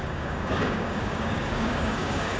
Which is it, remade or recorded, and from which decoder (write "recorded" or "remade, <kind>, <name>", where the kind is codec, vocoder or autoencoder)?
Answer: remade, codec, DAC